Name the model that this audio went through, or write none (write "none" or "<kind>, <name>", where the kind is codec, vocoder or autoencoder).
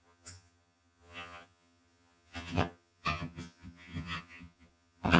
vocoder, HiFi-GAN